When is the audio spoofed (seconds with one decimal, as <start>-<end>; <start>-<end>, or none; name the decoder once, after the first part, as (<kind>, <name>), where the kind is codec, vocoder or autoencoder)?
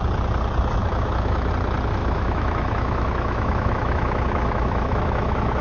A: 0.8-1.5 (autoencoder, DAC-VAE); 2.0-5.6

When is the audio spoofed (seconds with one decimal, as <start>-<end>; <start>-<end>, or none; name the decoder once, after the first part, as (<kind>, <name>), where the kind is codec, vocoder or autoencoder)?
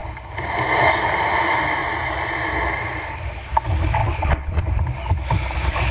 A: 4.0-4.6 (vocoder, WaveNeXt)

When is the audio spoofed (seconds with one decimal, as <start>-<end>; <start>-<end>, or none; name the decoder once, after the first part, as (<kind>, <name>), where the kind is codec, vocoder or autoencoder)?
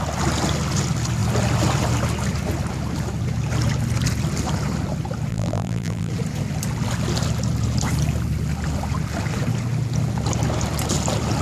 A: 5.3-6.1 (vocoder, BigVGAN v2)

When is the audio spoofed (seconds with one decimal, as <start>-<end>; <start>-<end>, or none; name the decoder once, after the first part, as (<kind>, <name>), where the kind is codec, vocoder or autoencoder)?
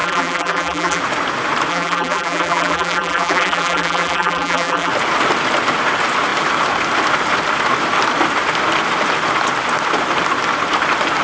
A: 0.0-1.0 (vocoder, BigVGAN v2); 1.7-4.9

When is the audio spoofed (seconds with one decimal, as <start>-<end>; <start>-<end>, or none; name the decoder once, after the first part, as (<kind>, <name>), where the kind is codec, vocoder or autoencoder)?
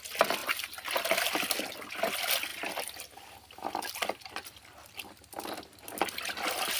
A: none